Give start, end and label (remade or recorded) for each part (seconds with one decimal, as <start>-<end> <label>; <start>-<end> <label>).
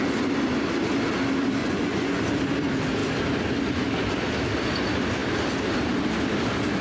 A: 0.0-1.6 recorded; 1.6-2.2 remade; 2.2-6.8 recorded